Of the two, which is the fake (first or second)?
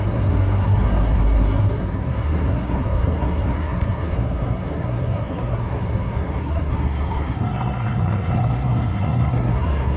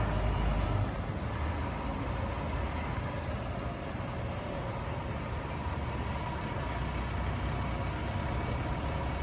first